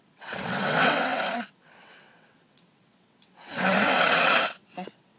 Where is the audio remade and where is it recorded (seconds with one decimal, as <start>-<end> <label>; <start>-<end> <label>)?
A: 0.0-5.2 remade